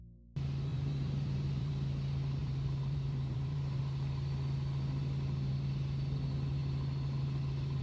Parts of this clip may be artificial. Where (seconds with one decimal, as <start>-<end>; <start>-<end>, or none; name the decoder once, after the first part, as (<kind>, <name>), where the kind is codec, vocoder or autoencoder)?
0.7-1.7 (vocoder, BigVGAN v2); 2.4-3.8